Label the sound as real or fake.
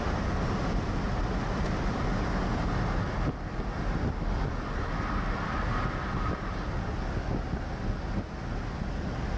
real